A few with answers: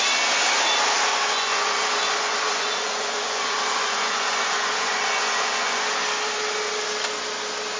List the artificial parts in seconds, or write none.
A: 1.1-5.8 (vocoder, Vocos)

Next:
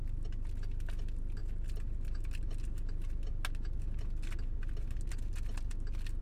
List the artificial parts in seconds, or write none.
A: none

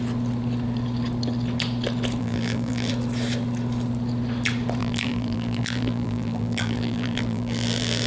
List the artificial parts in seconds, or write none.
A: 2.2-2.9 (vocoder, BigVGAN v2); 4.8-8.1

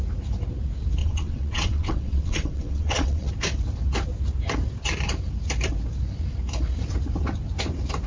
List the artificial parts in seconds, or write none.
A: 1.0-3.3 (vocoder, WaveNeXt)